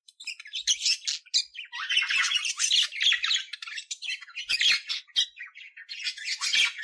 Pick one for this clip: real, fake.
real